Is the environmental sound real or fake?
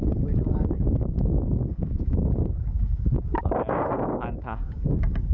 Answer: fake